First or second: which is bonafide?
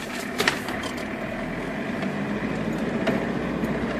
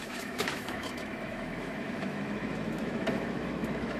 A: first